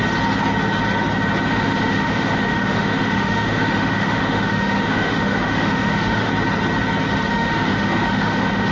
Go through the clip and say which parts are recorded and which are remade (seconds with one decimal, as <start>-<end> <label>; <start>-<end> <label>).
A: 0.0-1.5 recorded; 1.5-6.3 remade; 6.3-7.3 recorded; 7.3-8.7 remade

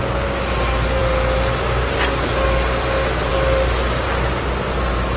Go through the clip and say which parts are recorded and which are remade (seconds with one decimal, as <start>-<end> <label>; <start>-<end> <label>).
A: 0.0-5.2 recorded

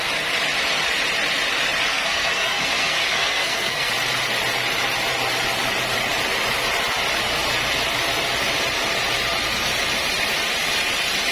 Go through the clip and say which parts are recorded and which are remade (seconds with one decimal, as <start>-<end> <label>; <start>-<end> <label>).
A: 0.0-1.9 recorded; 1.9-3.9 remade; 3.9-11.3 recorded

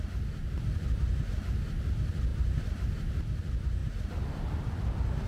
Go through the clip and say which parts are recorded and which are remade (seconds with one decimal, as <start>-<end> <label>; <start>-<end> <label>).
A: 0.0-0.4 recorded; 0.4-1.0 remade; 1.0-2.3 recorded; 2.3-2.9 remade; 2.9-3.8 recorded; 3.8-4.7 remade; 4.7-5.3 recorded

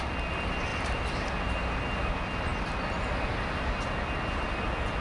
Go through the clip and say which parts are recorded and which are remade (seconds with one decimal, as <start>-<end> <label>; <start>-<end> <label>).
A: 0.0-0.7 recorded; 0.7-1.4 remade; 1.4-5.0 recorded